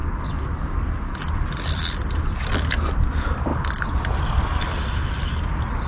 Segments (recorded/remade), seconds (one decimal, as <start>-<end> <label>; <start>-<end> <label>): 0.0-5.9 recorded

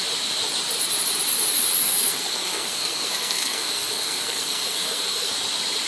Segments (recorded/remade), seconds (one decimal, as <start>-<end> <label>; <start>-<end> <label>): 0.0-1.8 recorded; 1.8-5.3 remade; 5.3-5.9 recorded

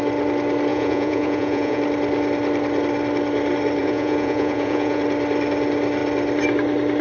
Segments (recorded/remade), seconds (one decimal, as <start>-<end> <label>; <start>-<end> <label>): 0.0-0.7 recorded; 0.7-1.8 remade; 1.8-3.8 recorded; 3.8-5.0 remade; 5.0-7.0 recorded